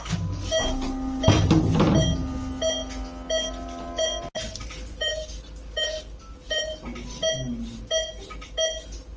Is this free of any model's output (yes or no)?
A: yes